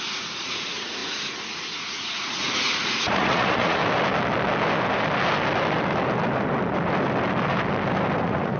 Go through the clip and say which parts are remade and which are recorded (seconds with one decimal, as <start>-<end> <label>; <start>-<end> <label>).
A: 0.0-3.8 remade; 3.8-8.2 recorded; 8.2-8.6 remade